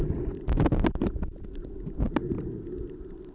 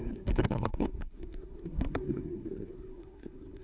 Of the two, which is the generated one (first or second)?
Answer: second